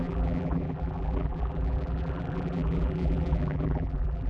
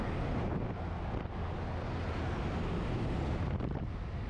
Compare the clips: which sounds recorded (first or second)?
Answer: second